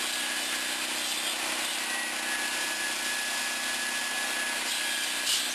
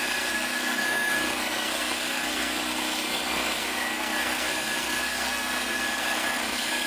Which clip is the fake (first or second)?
second